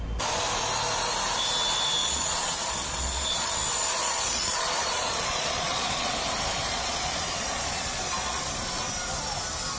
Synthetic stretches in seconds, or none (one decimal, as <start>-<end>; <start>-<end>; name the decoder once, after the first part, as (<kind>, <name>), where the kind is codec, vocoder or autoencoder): 2.0-3.5 (vocoder, Vocos); 4.0-6.1; 6.5-8.4